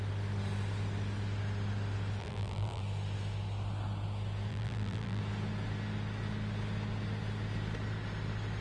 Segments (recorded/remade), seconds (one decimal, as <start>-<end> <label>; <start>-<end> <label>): 0.0-2.2 recorded; 2.2-2.8 remade; 2.8-4.5 recorded; 4.5-5.2 remade; 5.2-8.6 recorded